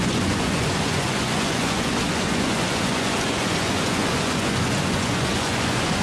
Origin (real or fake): fake